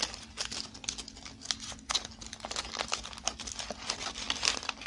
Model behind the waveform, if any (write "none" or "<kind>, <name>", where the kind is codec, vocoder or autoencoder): none